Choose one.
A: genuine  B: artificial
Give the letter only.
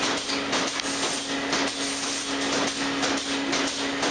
A